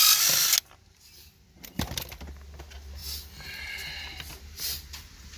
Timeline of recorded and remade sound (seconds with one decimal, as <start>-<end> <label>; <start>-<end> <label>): 0.0-5.4 recorded